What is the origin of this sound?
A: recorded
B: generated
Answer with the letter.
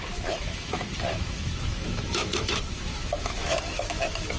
B